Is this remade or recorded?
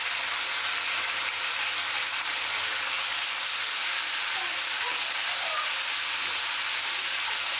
recorded